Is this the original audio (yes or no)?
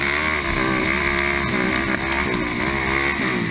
yes